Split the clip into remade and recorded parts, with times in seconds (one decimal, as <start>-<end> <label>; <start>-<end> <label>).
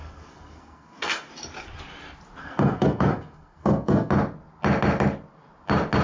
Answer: 0.0-1.3 remade; 1.3-2.4 recorded; 2.4-4.1 remade; 4.1-6.0 recorded